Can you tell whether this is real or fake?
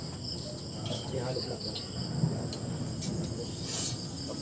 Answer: real